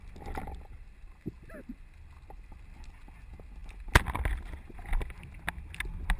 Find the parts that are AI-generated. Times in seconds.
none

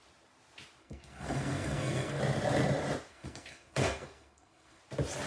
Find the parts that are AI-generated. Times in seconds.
0.8-2.2 (codec, SNAC); 3.1-4.8

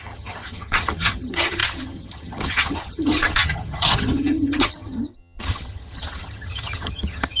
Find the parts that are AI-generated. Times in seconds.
0.0-7.4 (vocoder, HiFi-GAN)

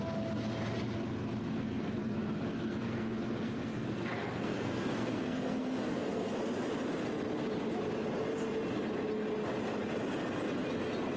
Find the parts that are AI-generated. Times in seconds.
1.4-6.3 (codec, SNAC)